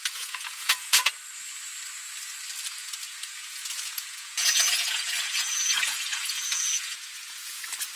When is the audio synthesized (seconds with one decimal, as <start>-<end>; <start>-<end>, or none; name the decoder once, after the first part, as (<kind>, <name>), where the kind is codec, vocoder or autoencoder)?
0.0-1.1 (vocoder, Vocos); 2.8-7.6